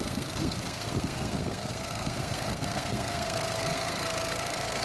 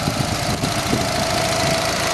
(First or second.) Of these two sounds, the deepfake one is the first